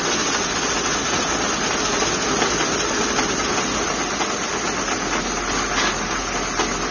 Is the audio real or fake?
real